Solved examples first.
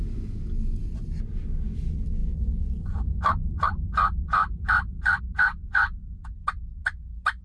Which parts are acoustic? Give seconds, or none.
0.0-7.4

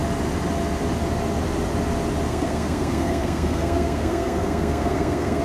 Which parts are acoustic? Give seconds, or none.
0.0-2.3

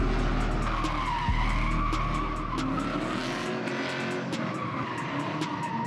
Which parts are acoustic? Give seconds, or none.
0.0-5.9

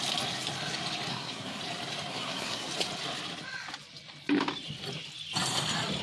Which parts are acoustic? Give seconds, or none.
0.0-1.1; 1.6-2.1; 2.7-6.0